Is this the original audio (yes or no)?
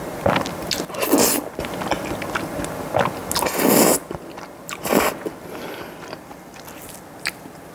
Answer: yes